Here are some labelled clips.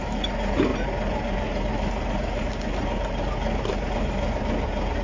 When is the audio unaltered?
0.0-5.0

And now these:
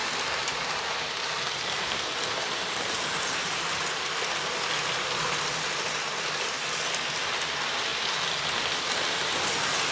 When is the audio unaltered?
4.2-9.9

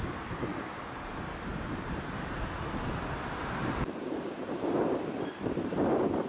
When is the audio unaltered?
0.0-0.5; 1.1-1.5; 2.1-3.6; 5.8-6.3

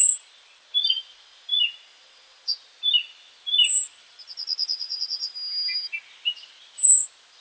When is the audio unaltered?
0.7-3.9; 5.0-7.4

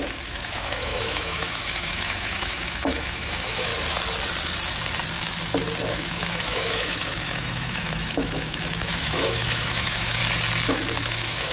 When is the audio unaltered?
3.7-5.9; 10.2-10.7